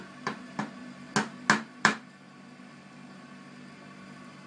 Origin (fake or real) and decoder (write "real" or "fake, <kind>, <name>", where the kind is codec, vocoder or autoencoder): real